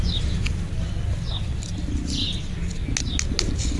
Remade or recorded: recorded